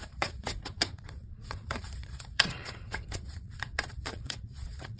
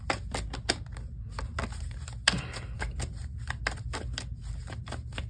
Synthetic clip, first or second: first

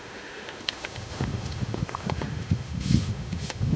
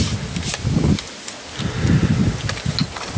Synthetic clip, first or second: first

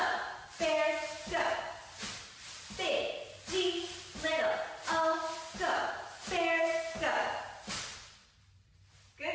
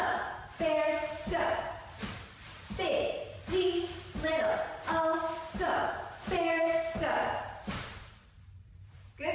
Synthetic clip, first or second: second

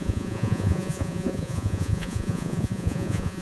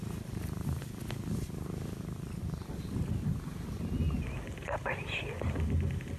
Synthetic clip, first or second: first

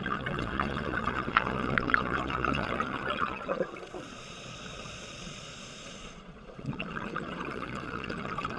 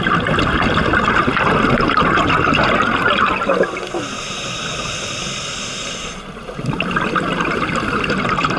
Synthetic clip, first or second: first